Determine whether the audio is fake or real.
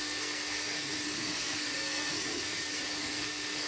fake